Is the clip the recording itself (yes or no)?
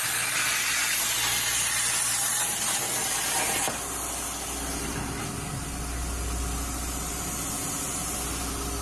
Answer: yes